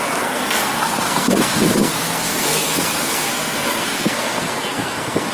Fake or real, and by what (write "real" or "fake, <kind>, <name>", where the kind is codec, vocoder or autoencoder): fake, codec, SNAC